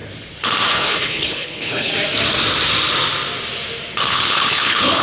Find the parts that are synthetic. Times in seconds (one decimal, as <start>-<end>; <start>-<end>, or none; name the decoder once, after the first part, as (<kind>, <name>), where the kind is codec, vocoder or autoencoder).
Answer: 0.7-1.9 (codec, HILCodec); 4.0-5.0